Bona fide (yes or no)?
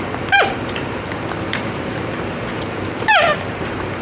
no